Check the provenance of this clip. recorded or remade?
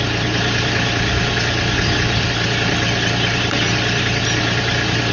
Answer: recorded